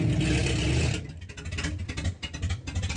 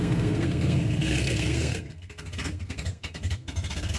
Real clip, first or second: first